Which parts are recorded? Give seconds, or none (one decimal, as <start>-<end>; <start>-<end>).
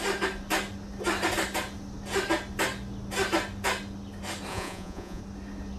0.0-4.5; 5.2-5.8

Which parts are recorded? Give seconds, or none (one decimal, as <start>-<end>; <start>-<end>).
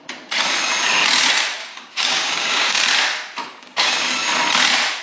0.0-1.6; 2.8-3.4; 4.2-5.0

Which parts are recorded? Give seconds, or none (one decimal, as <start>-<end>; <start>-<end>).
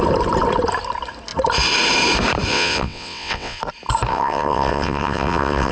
0.0-2.5; 3.6-4.1